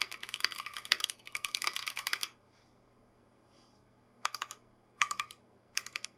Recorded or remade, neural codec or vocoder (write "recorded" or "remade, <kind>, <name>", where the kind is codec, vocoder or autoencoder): remade, codec, SNAC